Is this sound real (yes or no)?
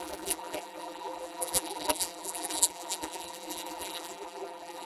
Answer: no